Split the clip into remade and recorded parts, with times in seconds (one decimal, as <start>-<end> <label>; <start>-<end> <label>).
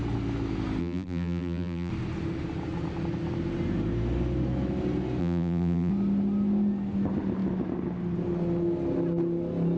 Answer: 0.0-0.8 recorded; 0.8-1.9 remade; 1.9-5.2 recorded; 5.2-5.9 remade; 5.9-9.8 recorded